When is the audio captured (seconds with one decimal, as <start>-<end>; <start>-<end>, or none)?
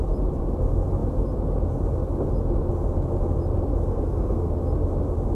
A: 0.0-3.9; 4.5-5.3